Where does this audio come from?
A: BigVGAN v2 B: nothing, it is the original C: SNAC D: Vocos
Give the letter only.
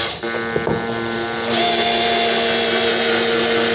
B